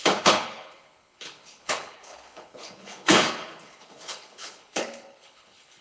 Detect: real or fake fake